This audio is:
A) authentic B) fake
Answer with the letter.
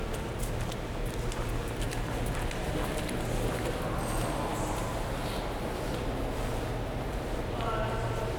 A